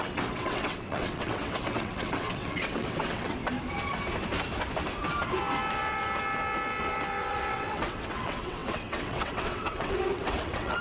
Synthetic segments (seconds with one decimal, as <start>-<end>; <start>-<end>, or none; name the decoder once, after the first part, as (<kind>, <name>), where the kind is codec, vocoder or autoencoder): 0.0-3.4 (vocoder, WaveNeXt); 7.2-10.8